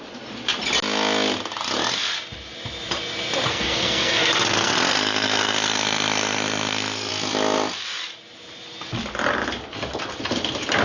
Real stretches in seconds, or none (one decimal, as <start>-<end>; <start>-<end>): 0.0-3.5; 7.1-10.8

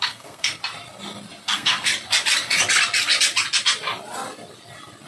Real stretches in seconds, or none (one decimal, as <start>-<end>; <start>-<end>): 0.6-1.4; 1.9-5.1

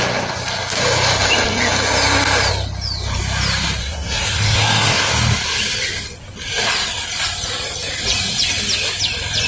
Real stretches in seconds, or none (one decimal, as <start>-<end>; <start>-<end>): 0.0-3.8; 5.1-9.5

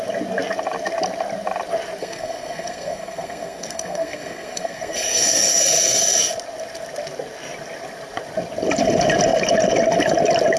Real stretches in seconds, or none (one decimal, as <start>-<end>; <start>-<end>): 0.0-2.0; 6.2-10.6

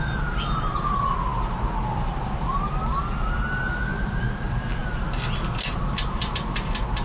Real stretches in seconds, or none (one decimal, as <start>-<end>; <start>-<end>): 0.0-7.0